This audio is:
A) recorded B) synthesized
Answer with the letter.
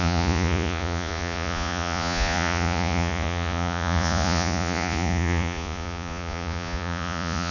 B